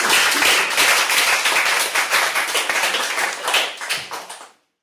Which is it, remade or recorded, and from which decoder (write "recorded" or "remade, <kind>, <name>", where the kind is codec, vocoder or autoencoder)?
recorded